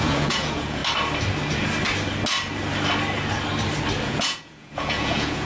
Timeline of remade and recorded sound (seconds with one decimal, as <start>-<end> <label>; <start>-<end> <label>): 0.0-0.8 remade; 0.8-4.0 recorded; 4.0-5.4 remade